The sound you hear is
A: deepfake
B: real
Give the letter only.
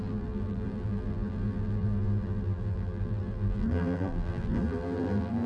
A